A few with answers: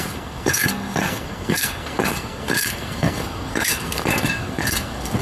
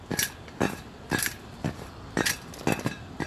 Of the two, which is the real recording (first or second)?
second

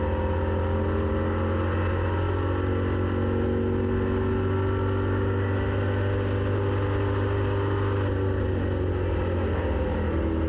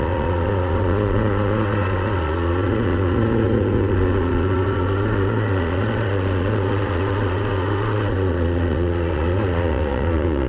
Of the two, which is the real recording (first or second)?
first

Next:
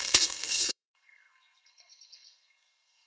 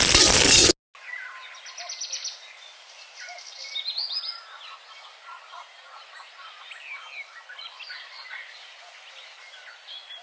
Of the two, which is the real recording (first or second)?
second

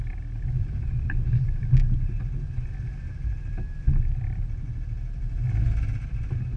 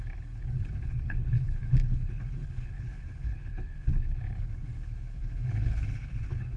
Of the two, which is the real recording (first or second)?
first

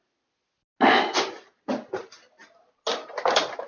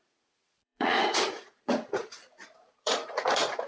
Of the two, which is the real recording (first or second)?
first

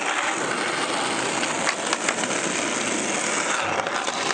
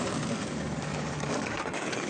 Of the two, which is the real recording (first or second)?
first